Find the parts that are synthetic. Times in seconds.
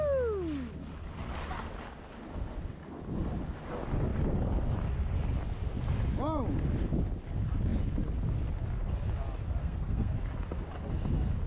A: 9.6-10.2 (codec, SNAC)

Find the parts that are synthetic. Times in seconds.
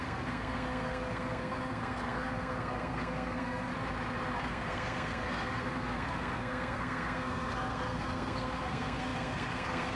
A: 0.0-3.7 (codec, SNAC); 4.4-10.0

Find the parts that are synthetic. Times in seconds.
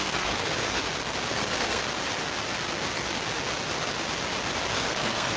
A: 0.0-0.8 (codec, SNAC); 1.3-1.8; 4.7-5.4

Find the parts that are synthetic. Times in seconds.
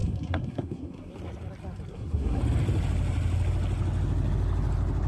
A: 0.0-1.1 (codec, SNAC); 1.9-2.4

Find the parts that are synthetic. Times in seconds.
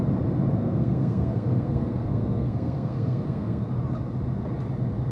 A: 0.6-3.7 (codec, SNAC)